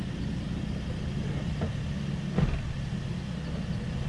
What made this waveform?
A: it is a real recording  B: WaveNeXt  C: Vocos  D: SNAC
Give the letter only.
A